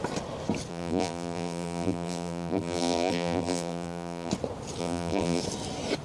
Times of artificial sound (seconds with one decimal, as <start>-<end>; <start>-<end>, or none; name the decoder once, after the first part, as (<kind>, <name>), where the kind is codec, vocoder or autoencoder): 0.7-4.3 (vocoder, BigVGAN v2); 4.8-5.4